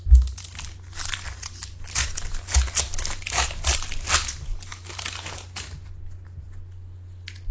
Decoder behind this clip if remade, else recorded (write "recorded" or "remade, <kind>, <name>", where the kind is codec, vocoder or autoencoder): recorded